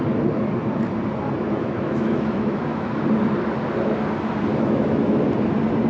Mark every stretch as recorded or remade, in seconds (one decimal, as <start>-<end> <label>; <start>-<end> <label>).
0.0-1.6 recorded; 1.6-3.0 remade; 3.0-4.5 recorded; 4.5-5.2 remade; 5.2-5.9 recorded